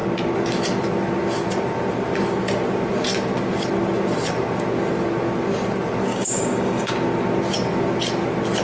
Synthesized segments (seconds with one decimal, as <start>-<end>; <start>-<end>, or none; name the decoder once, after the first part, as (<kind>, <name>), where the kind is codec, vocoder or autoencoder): 6.1-6.9 (codec, DAC)